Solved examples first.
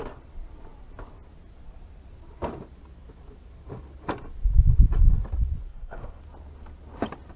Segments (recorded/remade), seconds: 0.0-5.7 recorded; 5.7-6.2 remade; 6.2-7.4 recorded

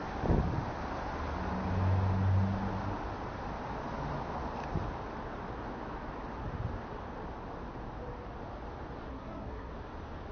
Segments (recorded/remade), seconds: 0.0-9.1 recorded; 9.1-9.7 remade; 9.7-10.3 recorded

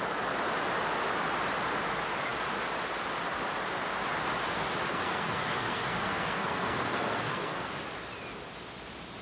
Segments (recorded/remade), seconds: 0.0-4.9 recorded; 4.9-7.7 remade; 7.7-9.2 recorded

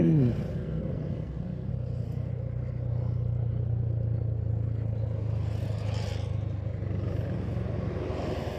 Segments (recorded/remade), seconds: 0.0-0.5 recorded; 0.5-1.7 remade; 1.7-8.6 recorded

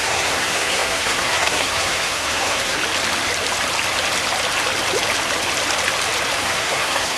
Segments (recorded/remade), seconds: 0.0-2.8 remade; 2.8-6.4 recorded; 6.4-7.2 remade

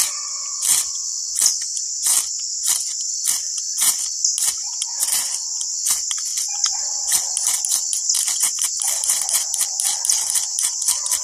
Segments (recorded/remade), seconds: 0.0-11.2 recorded

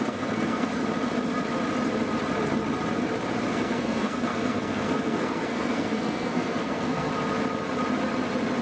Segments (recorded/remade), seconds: 0.0-0.8 remade; 0.8-3.5 recorded; 3.5-7.1 remade; 7.1-8.6 recorded

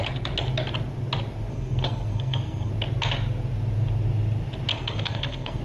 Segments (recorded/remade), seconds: 0.0-1.5 recorded; 1.5-2.7 remade; 2.7-4.7 recorded; 4.7-5.6 remade